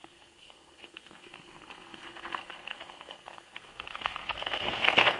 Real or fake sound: fake